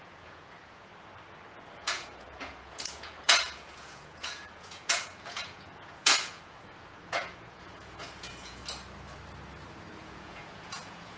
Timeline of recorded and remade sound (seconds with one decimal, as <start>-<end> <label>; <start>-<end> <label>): 0.0-0.9 remade; 0.9-1.7 recorded; 1.7-8.6 remade; 8.6-9.9 recorded; 9.9-11.2 remade